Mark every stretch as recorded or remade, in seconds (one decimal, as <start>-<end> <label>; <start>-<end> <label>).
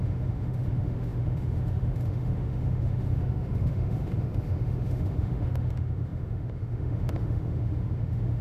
0.0-8.4 remade